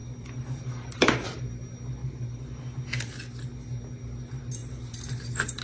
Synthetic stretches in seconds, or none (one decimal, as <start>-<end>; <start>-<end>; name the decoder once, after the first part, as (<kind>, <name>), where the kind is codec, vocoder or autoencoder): 0.0-1.4 (vocoder, BigVGAN v2); 2.0-2.6; 4.6-5.6